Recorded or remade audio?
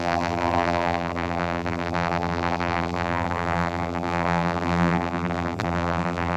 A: remade